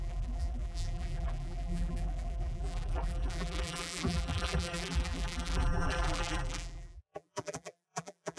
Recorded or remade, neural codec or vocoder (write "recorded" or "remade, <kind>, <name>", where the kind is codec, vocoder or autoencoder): remade, vocoder, BigVGAN v2